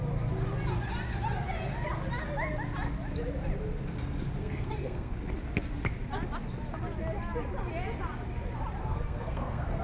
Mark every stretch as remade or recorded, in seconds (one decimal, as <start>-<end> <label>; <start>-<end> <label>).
0.0-4.4 recorded; 4.4-5.2 remade; 5.2-8.8 recorded; 8.8-9.8 remade